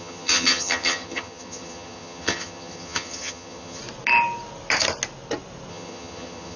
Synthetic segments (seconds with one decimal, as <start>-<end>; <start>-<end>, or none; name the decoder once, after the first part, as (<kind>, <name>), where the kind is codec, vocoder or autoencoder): 0.0-3.8 (vocoder, HiFi-GAN); 5.7-6.6